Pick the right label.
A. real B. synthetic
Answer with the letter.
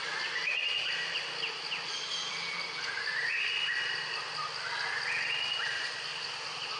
A